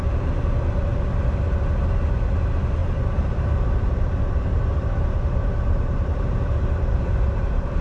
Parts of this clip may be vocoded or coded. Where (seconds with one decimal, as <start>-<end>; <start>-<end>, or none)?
2.8-7.8